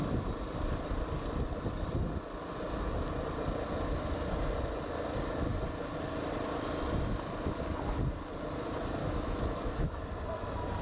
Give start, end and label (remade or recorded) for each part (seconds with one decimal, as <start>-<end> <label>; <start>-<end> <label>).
0.0-9.0 recorded; 9.0-10.0 remade; 10.0-10.8 recorded